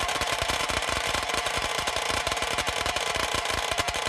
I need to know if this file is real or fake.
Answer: fake